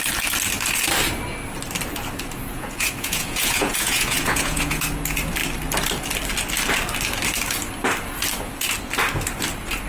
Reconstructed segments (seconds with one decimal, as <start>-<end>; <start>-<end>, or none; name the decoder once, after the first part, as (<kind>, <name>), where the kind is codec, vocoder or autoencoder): 2.5-4.8 (vocoder, Vocos)